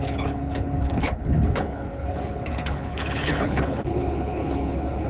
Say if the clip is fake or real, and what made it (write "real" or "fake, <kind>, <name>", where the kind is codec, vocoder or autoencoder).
fake, codec, HILCodec